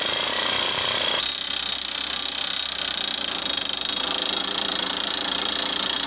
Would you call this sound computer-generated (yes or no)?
no